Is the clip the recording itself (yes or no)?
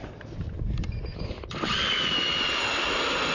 yes